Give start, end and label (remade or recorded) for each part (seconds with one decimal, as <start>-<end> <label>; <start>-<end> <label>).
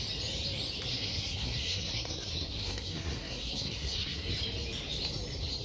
0.0-0.9 recorded; 0.9-4.3 remade; 4.3-5.6 recorded